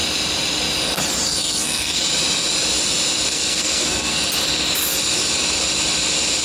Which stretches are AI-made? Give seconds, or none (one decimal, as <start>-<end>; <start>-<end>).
1.3-2.0; 3.3-4.2